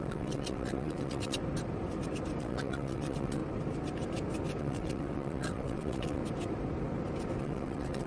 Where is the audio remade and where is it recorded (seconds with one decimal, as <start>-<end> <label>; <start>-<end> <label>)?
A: 0.0-1.4 remade; 1.4-2.4 recorded; 2.4-3.4 remade; 3.4-4.6 recorded; 4.6-6.2 remade; 6.2-7.4 recorded; 7.4-8.1 remade